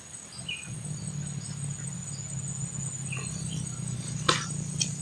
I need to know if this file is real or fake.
real